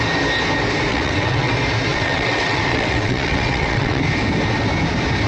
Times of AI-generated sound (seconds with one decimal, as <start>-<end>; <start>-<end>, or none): 0.9-1.5; 1.9-4.0